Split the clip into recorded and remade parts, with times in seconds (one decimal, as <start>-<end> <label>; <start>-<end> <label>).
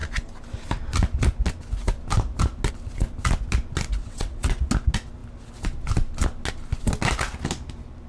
0.0-4.0 recorded; 4.0-4.7 remade; 4.7-8.1 recorded